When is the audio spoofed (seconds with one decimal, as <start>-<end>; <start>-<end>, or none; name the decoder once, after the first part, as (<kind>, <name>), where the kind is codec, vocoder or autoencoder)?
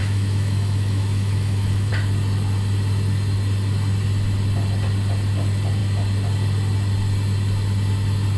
0.0-1.9 (autoencoder, DAC-VAE)